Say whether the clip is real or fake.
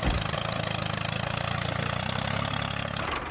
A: real